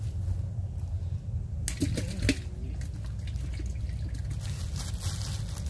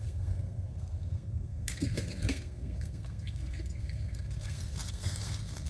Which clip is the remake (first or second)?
second